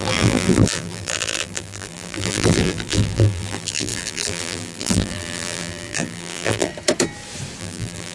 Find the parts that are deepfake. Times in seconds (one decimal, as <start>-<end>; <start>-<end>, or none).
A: 0.0-6.7; 7.6-8.1